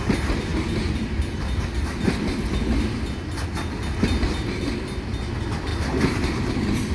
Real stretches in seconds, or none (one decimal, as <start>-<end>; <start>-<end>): 0.0-6.9